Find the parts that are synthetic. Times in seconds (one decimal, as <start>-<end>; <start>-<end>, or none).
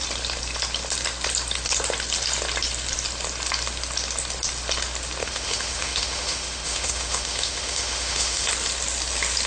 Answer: 5.2-8.5